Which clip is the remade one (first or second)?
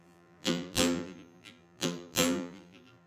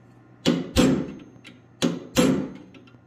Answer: first